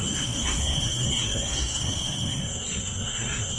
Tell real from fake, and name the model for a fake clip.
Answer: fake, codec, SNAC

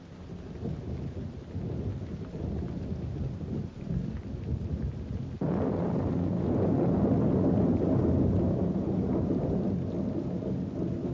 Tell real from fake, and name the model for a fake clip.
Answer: real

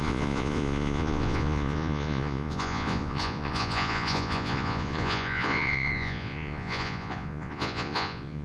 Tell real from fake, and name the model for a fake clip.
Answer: fake, vocoder, Vocos